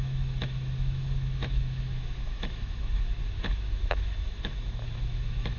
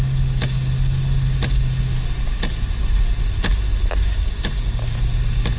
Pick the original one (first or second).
second